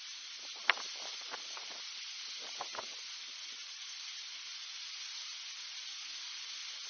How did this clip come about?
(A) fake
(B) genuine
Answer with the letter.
B